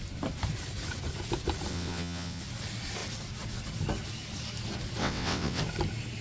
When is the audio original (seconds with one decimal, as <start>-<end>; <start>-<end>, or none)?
0.0-1.7; 2.4-5.0; 5.6-6.2